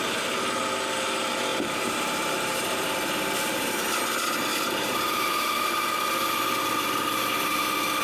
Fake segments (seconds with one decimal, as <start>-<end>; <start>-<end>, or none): 1.5-4.0; 4.5-6.4